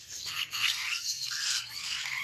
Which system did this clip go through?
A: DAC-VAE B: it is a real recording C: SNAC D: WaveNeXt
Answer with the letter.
C